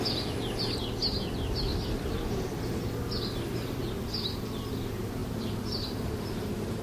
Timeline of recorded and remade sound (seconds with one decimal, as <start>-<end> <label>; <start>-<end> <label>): 0.0-1.7 recorded; 1.7-2.9 remade; 2.9-5.2 recorded; 5.2-6.8 remade

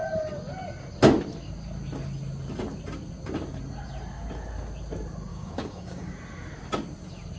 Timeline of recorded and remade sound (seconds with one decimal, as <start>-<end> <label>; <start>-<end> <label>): 0.0-5.3 recorded; 5.3-6.1 remade; 6.1-7.4 recorded